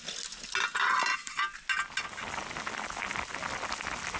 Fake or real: real